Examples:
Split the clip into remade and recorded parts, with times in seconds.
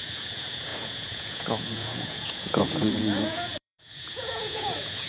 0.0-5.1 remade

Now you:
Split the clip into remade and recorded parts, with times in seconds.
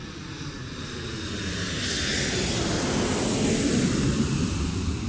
0.0-2.3 recorded; 2.3-5.1 remade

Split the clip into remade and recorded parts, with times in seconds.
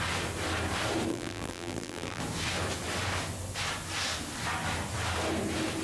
0.0-1.1 recorded; 1.1-2.2 remade; 2.2-5.8 recorded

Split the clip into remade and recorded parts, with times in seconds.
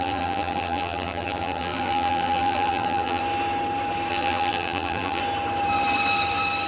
0.0-3.2 remade; 3.2-4.1 recorded; 4.1-5.2 remade; 5.2-6.7 recorded